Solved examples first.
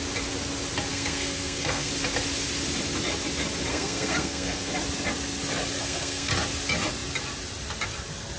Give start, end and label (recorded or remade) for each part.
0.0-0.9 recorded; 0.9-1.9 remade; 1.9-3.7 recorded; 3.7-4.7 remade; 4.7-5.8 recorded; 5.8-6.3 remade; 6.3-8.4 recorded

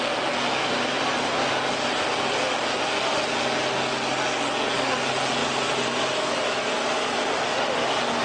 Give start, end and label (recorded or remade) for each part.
0.0-5.4 recorded; 5.4-7.3 remade; 7.3-8.2 recorded

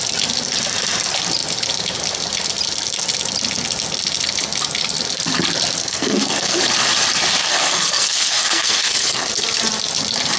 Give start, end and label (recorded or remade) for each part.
0.0-5.8 recorded; 5.8-6.6 remade; 6.6-7.4 recorded; 7.4-9.3 remade; 9.3-10.4 recorded